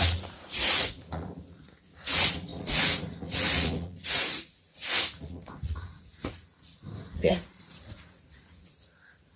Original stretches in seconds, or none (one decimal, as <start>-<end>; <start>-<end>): none